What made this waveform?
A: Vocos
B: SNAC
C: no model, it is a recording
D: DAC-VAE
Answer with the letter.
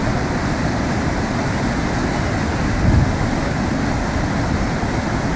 C